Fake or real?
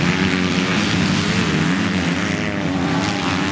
real